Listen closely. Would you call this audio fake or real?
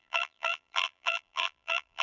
fake